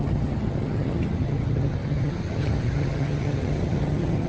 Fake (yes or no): yes